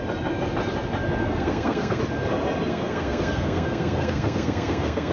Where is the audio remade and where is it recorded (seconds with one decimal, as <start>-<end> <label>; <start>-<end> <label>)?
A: 0.0-1.2 recorded; 1.2-2.0 remade; 2.0-2.7 recorded; 2.7-5.1 remade